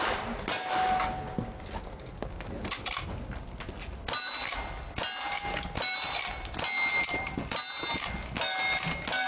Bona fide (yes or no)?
yes